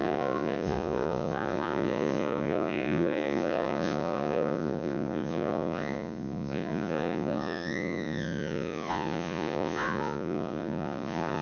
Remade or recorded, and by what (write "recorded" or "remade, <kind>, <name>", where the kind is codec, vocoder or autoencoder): remade, vocoder, Vocos